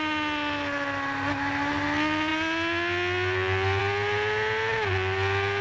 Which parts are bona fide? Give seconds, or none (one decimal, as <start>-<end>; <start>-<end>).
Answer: 0.0-5.6